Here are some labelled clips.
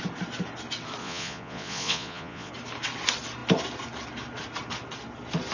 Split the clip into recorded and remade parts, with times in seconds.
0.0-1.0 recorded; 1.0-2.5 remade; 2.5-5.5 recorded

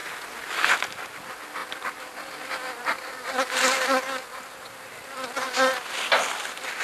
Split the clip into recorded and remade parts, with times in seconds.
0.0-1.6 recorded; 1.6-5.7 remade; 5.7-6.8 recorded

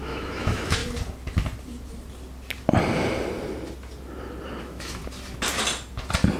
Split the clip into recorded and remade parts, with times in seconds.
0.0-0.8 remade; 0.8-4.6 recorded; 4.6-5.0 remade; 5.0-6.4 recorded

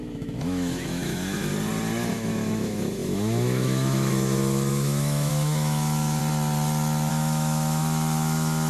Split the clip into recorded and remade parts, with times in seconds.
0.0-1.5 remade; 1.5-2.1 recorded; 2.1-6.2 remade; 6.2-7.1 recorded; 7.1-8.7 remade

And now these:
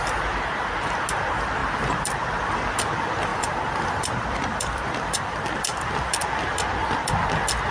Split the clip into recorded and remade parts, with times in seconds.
0.0-1.6 recorded; 1.6-2.8 remade; 2.8-3.3 recorded; 3.3-6.3 remade; 6.3-7.7 recorded